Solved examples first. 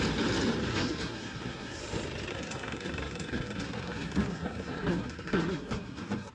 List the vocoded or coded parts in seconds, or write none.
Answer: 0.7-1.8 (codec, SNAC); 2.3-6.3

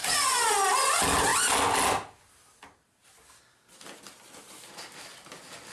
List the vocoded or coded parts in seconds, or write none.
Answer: none

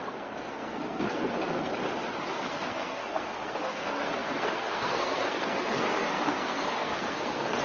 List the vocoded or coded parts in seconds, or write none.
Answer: 0.0-1.7 (codec, SNAC); 2.3-7.6

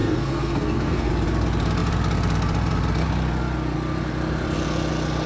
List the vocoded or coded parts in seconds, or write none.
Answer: 0.0-1.1 (codec, SNAC)

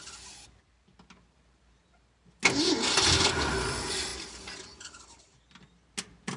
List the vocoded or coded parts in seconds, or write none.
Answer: none

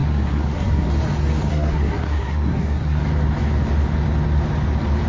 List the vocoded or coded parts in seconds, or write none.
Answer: 0.0-0.9 (codec, SNAC); 1.5-3.0

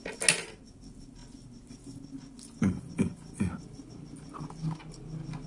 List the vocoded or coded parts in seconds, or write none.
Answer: none

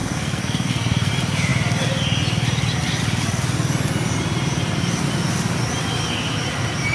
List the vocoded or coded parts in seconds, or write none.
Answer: 0.0-1.1 (codec, SNAC)